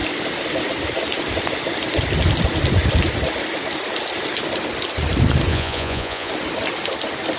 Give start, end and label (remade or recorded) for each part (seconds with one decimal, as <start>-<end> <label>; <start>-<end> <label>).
0.0-5.5 recorded; 5.5-6.3 remade; 6.3-7.4 recorded